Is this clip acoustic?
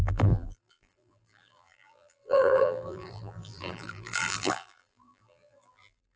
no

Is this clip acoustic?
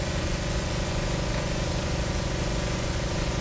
no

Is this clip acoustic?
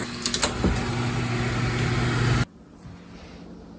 yes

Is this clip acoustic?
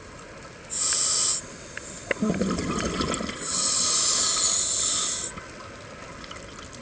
yes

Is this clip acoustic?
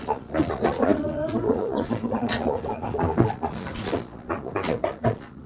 no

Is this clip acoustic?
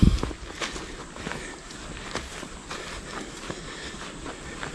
yes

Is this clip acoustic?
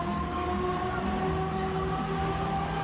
yes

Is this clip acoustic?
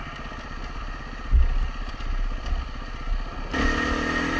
yes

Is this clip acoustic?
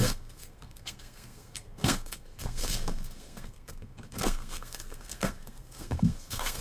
no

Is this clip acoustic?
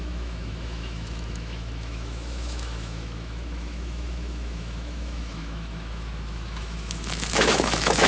no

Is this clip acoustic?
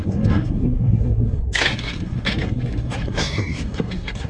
no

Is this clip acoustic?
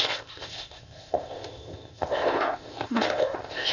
no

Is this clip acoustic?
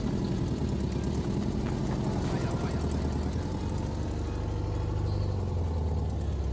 yes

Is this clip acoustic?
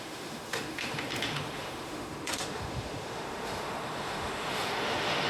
no